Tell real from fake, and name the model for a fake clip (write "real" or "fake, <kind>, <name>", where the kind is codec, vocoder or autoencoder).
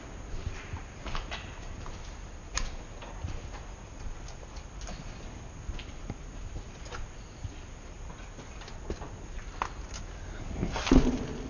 real